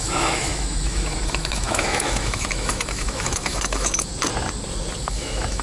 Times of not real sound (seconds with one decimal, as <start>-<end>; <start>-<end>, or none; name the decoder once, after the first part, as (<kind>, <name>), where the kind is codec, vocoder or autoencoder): 0.0-4.1 (autoencoder, DAC-VAE); 5.0-5.6